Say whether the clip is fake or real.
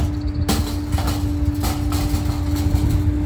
real